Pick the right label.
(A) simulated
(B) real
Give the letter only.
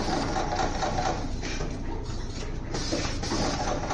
B